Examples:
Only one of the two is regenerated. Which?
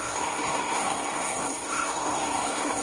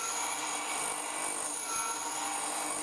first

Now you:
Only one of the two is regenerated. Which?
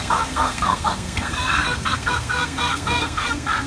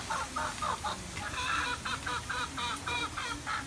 first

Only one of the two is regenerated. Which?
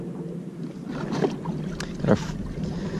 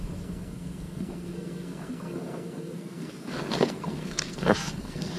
second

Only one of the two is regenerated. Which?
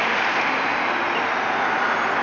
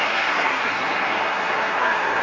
second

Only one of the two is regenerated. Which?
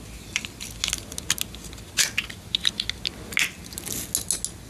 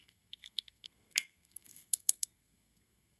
second